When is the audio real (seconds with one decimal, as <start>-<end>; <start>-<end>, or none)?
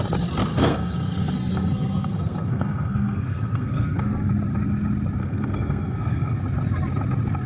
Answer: 0.0-0.5; 4.3-5.2; 6.4-7.5